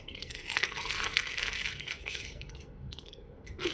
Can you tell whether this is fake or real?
fake